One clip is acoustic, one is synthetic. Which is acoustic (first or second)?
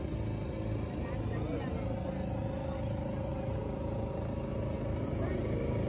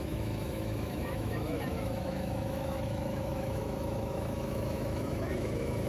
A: first